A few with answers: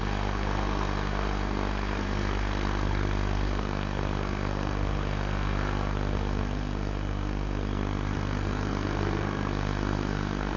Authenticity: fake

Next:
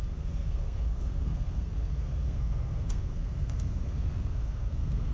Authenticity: fake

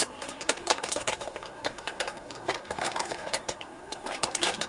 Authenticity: fake